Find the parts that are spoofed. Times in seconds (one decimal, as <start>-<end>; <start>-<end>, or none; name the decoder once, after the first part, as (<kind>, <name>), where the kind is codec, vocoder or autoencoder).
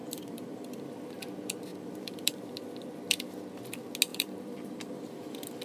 0.0-0.8 (vocoder, BigVGAN v2); 1.7-2.4; 4.1-5.6